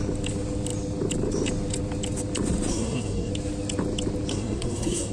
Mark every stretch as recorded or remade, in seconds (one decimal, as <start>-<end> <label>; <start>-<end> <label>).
0.0-2.7 recorded; 2.7-3.3 remade; 3.3-4.3 recorded; 4.3-5.1 remade